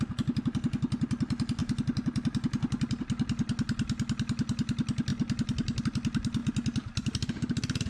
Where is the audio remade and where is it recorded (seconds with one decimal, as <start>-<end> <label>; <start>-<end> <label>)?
0.0-7.9 recorded